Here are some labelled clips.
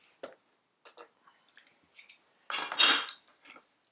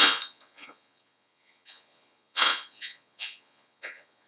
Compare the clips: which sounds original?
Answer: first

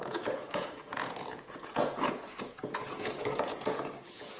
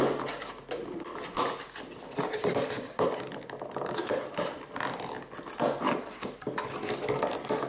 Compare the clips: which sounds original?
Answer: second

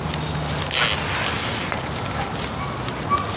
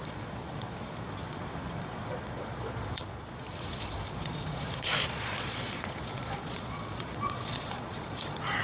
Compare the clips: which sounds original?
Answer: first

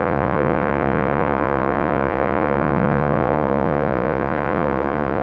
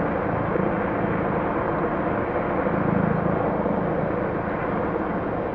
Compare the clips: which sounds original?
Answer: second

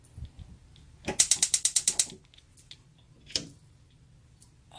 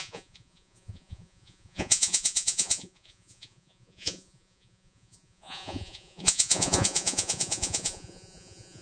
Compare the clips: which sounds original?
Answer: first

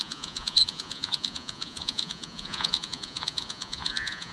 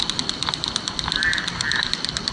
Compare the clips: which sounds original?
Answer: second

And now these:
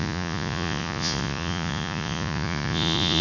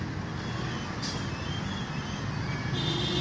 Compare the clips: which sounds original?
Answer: second